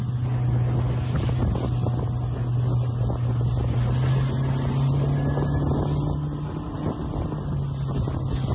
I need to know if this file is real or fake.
real